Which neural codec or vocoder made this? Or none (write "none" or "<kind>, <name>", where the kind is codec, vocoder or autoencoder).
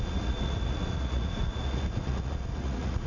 vocoder, Vocos